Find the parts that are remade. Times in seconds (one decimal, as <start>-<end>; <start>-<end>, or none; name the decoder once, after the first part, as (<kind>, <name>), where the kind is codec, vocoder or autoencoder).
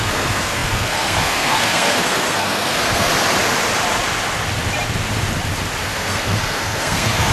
0.0-3.1 (codec, SNAC); 5.8-7.3